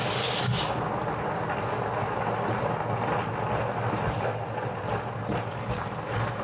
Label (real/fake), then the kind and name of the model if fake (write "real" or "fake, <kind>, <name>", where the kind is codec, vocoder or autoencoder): real